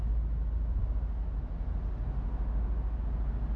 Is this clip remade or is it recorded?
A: recorded